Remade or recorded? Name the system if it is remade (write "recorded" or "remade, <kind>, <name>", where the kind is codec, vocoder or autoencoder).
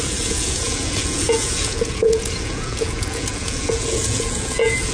remade, vocoder, Vocos